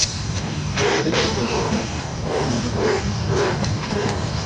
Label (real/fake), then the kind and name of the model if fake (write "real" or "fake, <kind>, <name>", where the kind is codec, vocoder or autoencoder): fake, codec, DAC